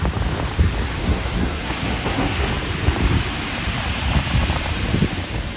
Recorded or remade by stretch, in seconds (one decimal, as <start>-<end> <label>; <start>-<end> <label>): 0.0-1.0 recorded; 1.0-2.5 remade; 2.5-5.6 recorded